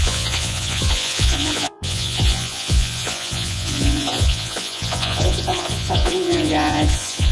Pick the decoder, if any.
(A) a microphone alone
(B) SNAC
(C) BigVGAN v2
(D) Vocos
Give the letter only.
D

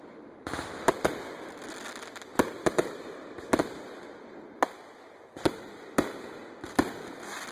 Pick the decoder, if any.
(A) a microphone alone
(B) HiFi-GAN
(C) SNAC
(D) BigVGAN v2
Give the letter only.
A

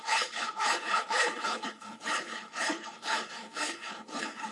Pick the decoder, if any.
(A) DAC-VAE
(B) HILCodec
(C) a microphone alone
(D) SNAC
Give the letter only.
B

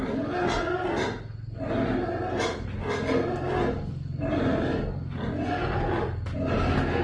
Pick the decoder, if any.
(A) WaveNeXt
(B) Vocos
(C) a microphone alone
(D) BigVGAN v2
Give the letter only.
C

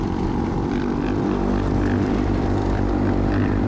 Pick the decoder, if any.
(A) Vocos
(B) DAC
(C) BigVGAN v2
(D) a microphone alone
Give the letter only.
C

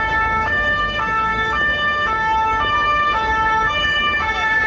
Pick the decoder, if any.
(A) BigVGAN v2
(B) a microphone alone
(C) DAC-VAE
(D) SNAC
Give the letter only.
C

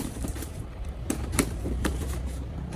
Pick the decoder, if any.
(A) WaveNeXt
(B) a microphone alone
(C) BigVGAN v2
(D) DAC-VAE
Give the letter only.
C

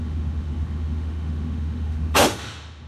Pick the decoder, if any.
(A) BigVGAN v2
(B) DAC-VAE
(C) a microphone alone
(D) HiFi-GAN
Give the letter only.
B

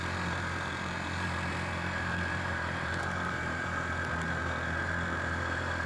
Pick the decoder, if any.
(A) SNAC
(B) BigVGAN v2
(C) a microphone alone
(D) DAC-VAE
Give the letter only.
B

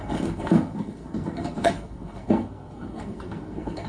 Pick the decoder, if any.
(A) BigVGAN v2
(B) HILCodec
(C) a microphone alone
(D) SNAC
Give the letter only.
D